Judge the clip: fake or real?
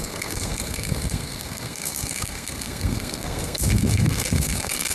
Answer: fake